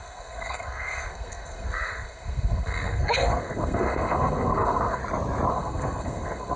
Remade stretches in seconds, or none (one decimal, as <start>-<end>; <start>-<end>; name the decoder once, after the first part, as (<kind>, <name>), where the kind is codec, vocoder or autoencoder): 0.0-5.0 (codec, SNAC); 5.5-6.6